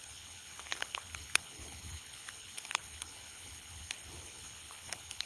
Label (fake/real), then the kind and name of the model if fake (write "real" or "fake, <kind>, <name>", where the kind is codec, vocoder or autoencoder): fake, codec, HILCodec